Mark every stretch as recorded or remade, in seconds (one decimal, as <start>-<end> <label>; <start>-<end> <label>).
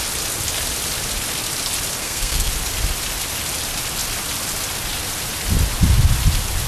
0.0-2.0 recorded; 2.0-2.5 remade; 2.5-6.7 recorded